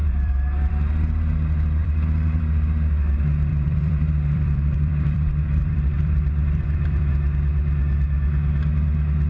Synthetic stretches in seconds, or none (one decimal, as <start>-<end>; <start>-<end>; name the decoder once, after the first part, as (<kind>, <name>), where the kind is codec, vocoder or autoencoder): 0.0-0.7 (vocoder, BigVGAN v2); 1.8-2.4; 3.5-7.1

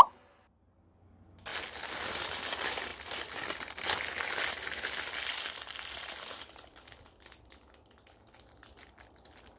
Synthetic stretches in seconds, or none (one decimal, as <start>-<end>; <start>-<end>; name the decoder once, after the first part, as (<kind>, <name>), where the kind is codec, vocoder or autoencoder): none